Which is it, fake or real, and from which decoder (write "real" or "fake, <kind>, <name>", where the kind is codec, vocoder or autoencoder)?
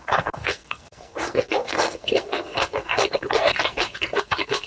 fake, codec, SNAC